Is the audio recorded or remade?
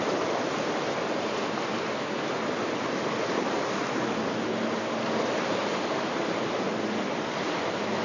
recorded